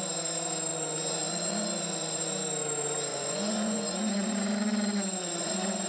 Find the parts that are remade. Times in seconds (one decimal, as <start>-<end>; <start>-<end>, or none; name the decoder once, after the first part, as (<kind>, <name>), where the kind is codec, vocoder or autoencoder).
0.7-2.3 (vocoder, Vocos); 3.1-5.9